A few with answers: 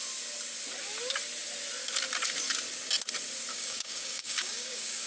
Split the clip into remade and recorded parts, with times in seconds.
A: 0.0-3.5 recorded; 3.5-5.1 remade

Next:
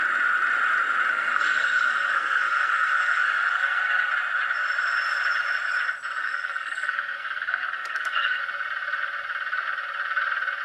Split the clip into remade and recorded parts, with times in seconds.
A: 0.0-1.1 recorded; 1.1-4.1 remade; 4.1-6.2 recorded; 6.2-8.4 remade; 8.4-10.6 recorded

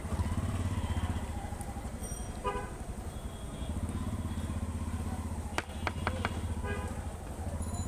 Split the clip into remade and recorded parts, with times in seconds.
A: 0.0-1.9 remade; 1.9-6.3 recorded; 6.3-7.9 remade

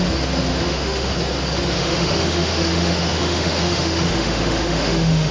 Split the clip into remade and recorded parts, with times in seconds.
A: 0.0-0.5 recorded; 0.5-1.1 remade; 1.1-1.8 recorded; 1.8-5.3 remade